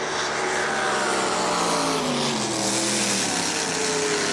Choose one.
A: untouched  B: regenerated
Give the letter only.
A